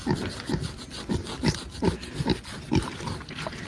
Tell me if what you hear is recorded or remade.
recorded